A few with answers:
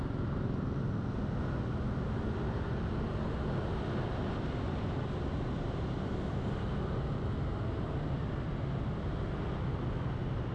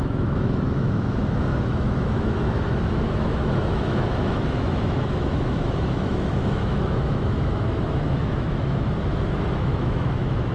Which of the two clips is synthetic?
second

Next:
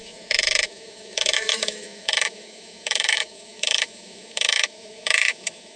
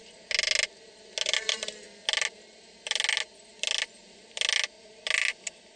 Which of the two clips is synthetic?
first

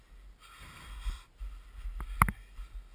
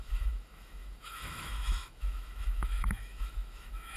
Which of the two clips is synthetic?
second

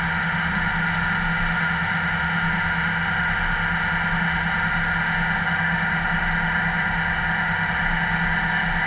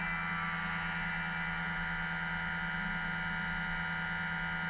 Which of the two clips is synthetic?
first